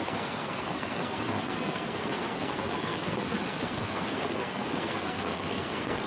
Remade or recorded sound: remade